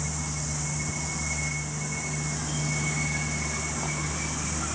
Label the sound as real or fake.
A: real